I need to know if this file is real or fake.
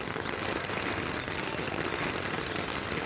real